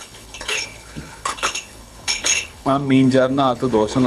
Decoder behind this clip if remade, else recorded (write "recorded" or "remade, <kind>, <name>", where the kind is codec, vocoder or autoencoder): remade, codec, HILCodec